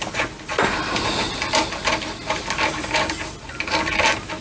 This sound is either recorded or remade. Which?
recorded